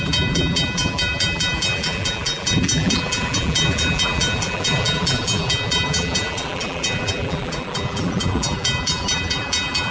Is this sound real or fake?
fake